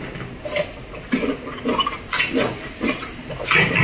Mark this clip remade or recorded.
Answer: recorded